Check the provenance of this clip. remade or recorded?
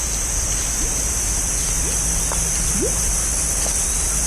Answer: recorded